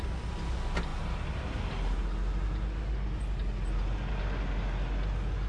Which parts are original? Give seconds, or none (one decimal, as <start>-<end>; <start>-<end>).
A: 0.0-5.5